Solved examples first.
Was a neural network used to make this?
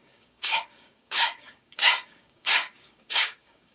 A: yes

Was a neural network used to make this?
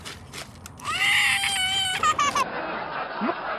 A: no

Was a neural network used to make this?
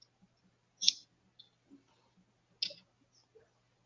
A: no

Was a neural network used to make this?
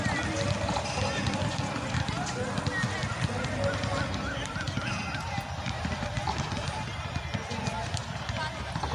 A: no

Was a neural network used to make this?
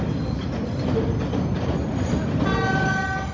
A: no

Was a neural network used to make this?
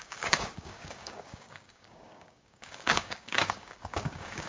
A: yes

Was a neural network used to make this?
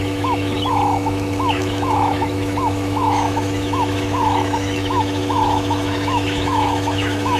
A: yes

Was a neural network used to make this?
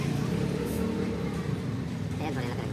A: yes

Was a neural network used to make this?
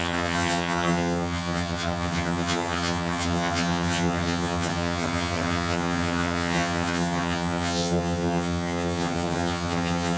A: yes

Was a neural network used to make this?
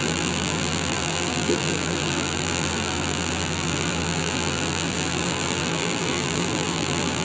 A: yes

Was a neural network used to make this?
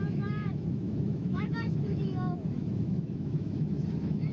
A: yes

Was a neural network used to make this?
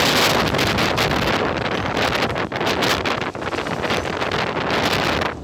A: no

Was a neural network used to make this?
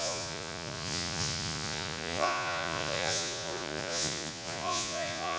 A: yes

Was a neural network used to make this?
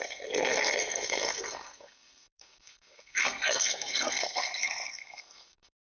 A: yes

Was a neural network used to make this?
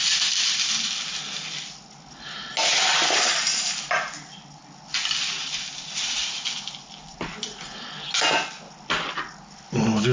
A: no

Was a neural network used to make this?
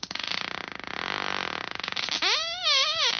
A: no